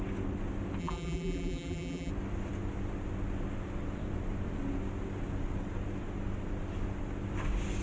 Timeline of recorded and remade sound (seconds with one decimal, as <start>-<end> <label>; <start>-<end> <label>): 0.0-0.8 recorded; 0.8-2.1 remade; 2.1-7.8 recorded